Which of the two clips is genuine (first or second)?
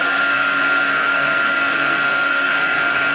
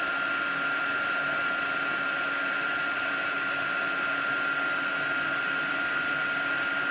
second